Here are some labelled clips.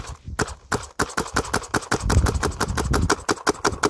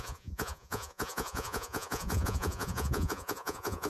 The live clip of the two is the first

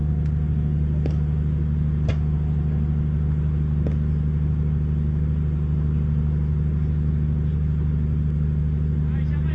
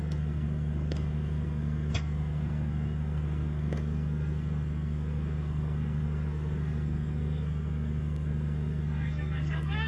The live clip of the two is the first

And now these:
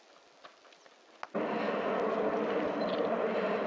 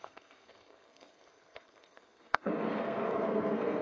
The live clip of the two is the first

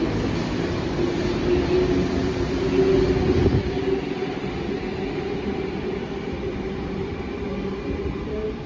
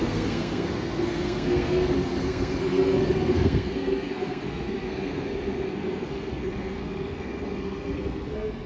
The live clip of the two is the first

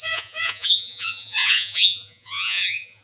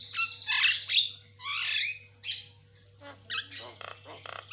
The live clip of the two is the second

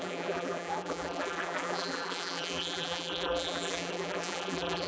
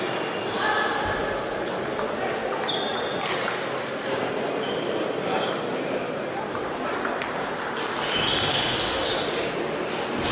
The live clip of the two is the second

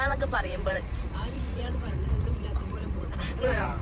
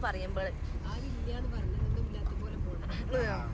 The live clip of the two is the second